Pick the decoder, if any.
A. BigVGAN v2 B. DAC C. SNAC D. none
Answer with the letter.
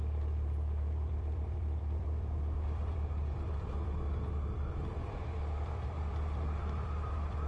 A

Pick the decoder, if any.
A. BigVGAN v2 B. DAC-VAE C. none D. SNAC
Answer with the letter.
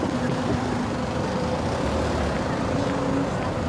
C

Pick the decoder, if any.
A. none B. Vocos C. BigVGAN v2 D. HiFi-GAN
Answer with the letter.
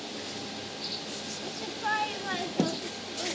A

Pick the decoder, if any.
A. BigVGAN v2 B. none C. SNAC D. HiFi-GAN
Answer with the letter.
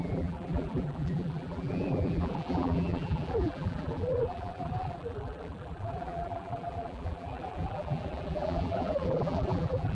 A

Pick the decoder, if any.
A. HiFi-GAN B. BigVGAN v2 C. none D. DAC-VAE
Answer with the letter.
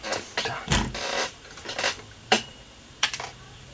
B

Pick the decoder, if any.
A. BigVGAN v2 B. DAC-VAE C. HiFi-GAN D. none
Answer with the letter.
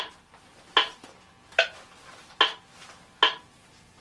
D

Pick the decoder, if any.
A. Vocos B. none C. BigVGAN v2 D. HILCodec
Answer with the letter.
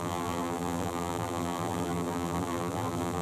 C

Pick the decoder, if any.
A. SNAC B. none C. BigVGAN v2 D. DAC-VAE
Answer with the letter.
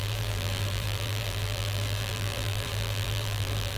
C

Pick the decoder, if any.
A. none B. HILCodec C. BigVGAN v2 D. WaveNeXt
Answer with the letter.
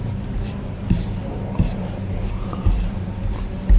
C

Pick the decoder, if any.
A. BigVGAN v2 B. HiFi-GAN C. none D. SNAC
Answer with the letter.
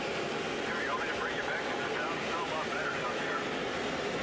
C